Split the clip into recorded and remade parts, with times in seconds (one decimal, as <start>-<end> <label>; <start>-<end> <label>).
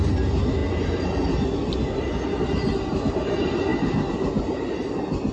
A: 0.0-5.3 recorded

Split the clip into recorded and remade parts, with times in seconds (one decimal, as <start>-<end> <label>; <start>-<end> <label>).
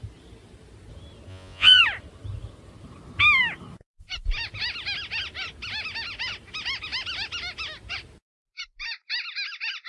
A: 0.0-1.3 recorded; 1.3-1.8 remade; 1.8-9.9 recorded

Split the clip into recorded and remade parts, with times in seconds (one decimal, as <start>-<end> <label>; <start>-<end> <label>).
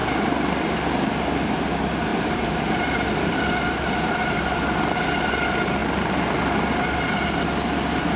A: 0.0-2.1 recorded; 2.1-5.3 remade; 5.3-8.2 recorded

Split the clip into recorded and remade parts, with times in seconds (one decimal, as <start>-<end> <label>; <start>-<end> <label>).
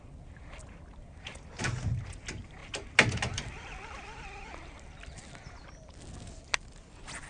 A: 0.0-7.3 recorded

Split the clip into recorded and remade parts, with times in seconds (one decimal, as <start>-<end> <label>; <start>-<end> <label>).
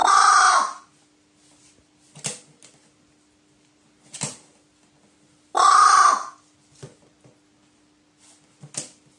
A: 0.0-9.2 recorded